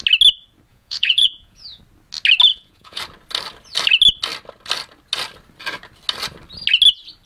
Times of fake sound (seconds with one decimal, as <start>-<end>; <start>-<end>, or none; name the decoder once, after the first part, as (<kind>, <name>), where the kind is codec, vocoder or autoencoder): 0.7-1.8 (vocoder, Vocos); 2.5-3.0